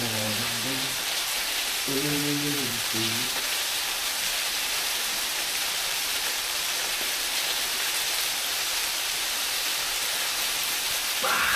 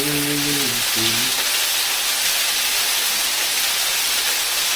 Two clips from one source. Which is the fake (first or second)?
first